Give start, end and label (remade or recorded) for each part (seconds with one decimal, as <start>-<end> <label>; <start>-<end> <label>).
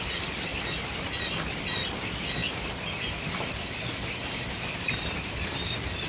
0.0-0.5 remade; 0.5-1.6 recorded; 1.6-6.1 remade